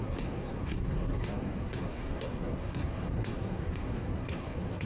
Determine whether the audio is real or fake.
fake